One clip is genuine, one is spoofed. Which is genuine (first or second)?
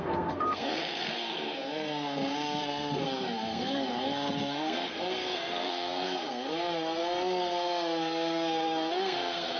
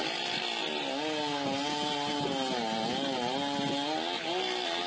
second